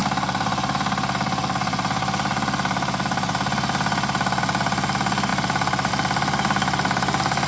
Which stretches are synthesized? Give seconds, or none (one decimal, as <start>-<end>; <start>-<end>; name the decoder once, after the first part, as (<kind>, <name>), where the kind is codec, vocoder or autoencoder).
none

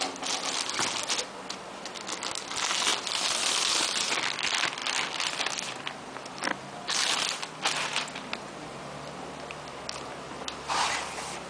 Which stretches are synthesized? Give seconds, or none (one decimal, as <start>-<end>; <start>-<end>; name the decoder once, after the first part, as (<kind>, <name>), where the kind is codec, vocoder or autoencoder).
none